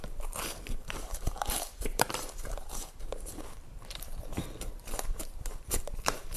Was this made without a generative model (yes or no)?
no